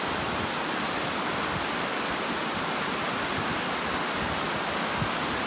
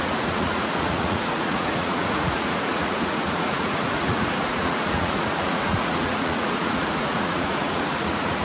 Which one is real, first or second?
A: first